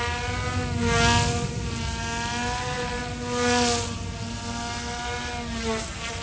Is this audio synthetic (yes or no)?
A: no